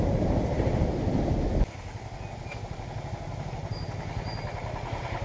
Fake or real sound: real